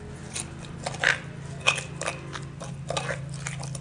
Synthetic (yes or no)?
no